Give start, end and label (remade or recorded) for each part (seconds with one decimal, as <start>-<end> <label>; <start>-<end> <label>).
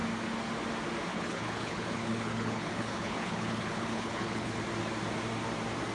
0.0-1.1 recorded; 1.1-4.6 remade; 4.6-5.9 recorded